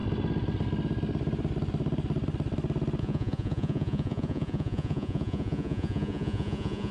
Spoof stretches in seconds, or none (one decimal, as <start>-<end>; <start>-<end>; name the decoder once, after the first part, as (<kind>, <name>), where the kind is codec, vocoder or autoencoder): 3.0-6.9 (vocoder, Vocos)